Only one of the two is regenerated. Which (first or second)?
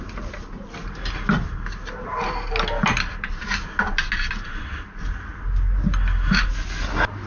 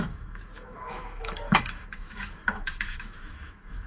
second